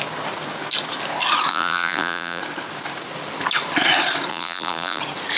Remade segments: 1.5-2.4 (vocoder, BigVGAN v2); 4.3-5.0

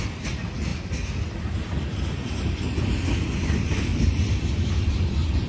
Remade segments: 3.9-5.0 (vocoder, BigVGAN v2)